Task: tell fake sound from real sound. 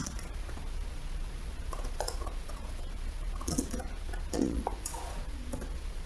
fake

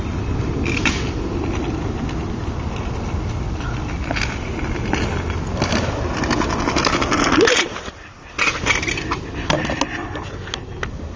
real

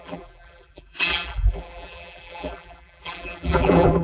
fake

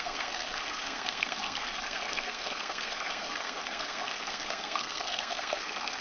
fake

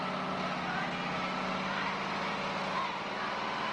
real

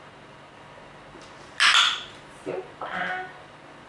real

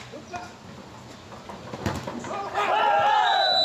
real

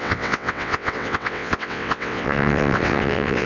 fake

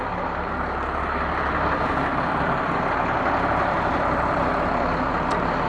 fake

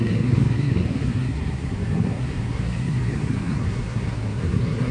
fake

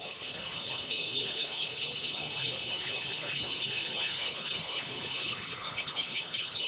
fake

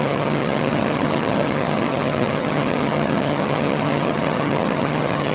fake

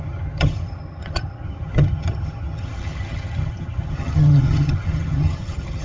fake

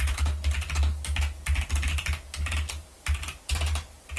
real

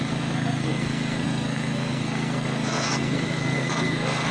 fake